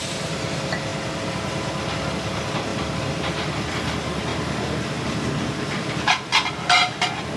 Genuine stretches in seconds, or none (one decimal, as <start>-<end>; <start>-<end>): 0.9-2.1; 4.3-5.0; 6.3-7.4